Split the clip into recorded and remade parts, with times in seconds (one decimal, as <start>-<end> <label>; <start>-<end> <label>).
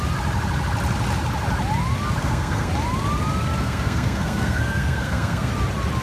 0.0-2.2 recorded; 2.2-2.7 remade; 2.7-3.6 recorded; 3.6-5.5 remade; 5.5-6.0 recorded